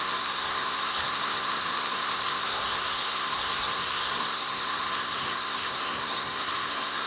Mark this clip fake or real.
fake